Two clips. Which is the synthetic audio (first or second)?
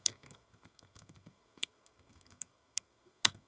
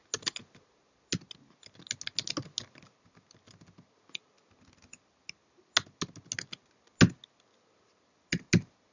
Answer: first